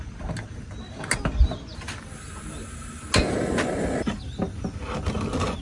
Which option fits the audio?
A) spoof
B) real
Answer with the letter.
B